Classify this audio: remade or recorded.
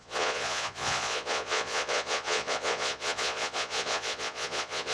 remade